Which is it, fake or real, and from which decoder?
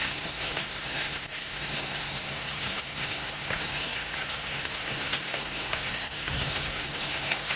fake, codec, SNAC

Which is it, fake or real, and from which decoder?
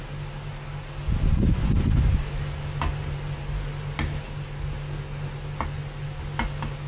real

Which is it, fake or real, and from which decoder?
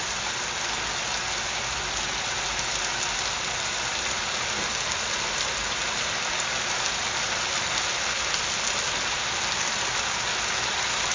real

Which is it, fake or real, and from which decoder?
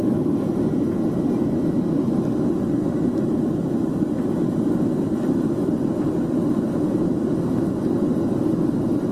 real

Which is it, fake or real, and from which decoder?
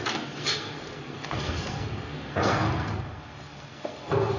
fake, codec, SNAC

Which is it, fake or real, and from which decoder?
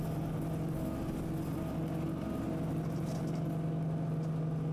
real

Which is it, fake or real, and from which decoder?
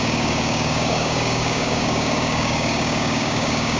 fake, codec, DAC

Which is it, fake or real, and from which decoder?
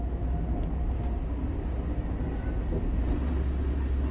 real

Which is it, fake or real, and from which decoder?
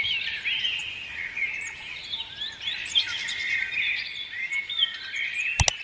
real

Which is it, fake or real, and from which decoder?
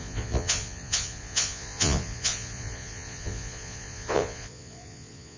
fake, vocoder, Vocos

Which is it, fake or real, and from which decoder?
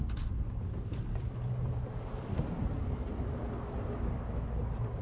real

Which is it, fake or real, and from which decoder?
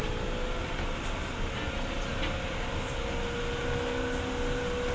real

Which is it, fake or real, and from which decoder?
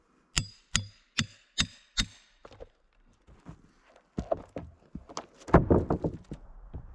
real